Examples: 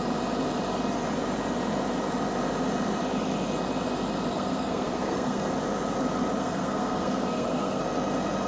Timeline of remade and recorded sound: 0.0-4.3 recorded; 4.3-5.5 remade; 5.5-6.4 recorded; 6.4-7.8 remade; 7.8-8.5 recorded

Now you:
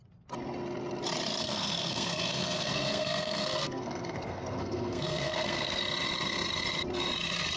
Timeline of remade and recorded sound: 0.0-1.4 recorded; 1.4-5.8 remade; 5.8-7.6 recorded

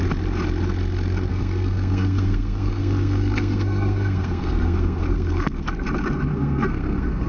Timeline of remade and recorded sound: 0.0-1.3 recorded; 1.3-5.7 remade; 5.7-6.3 recorded; 6.3-7.3 remade

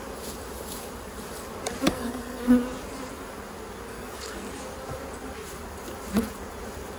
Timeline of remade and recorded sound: 0.0-1.9 recorded; 1.9-2.5 remade; 2.5-3.9 recorded; 3.9-4.5 remade; 4.5-7.0 recorded

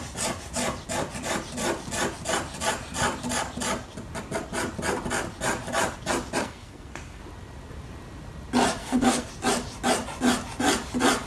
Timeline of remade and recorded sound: 0.0-6.4 recorded; 6.4-7.2 remade; 7.2-8.8 recorded; 8.8-9.3 remade; 9.3-11.3 recorded